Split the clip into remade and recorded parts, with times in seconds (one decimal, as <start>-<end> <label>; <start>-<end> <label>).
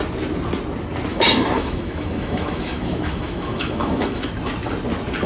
0.0-1.1 recorded; 1.1-4.3 remade; 4.3-5.3 recorded